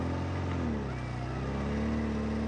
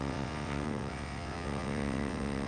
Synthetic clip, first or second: second